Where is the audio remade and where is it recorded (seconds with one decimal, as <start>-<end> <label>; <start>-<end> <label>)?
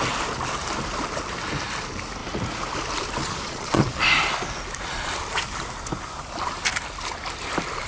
0.0-3.2 recorded; 3.2-4.0 remade; 4.0-7.9 recorded